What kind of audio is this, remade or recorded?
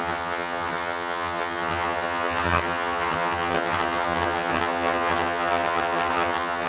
remade